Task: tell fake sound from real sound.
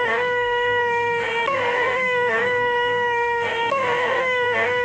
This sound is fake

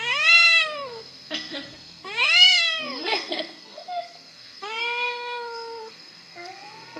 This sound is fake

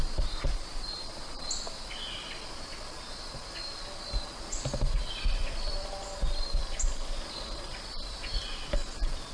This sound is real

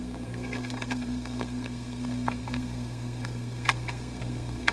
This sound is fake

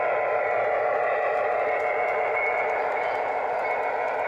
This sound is real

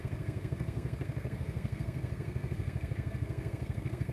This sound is fake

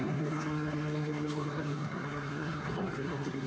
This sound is fake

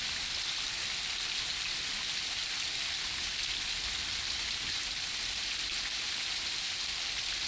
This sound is real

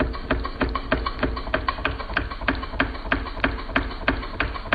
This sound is real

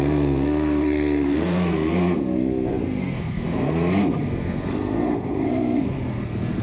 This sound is fake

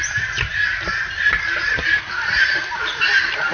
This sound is real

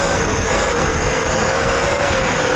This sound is fake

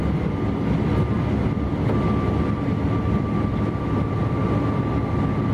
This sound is real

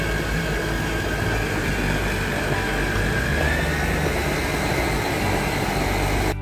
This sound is real